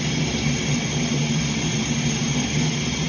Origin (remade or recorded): recorded